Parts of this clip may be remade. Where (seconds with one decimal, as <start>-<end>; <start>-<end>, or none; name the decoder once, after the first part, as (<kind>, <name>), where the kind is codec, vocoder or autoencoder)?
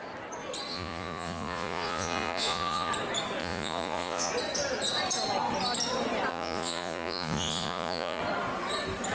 0.7-2.9 (vocoder, Vocos); 3.4-4.3; 6.3-8.2